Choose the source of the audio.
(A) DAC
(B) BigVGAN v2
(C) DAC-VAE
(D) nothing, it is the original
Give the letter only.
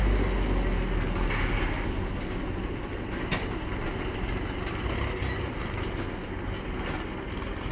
D